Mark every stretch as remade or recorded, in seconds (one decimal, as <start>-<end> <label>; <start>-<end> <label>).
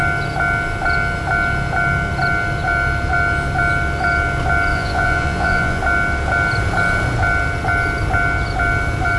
0.0-4.7 recorded; 4.7-5.8 remade; 5.8-9.2 recorded